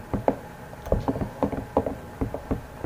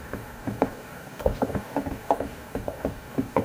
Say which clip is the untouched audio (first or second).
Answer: first